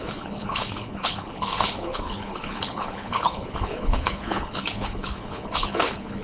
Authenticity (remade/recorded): remade